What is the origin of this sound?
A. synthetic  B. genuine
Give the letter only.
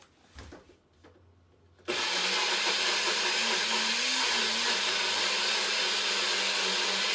B